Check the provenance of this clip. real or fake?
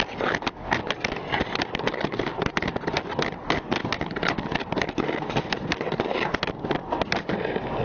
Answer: real